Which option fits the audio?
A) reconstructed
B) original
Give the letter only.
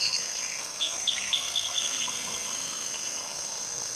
A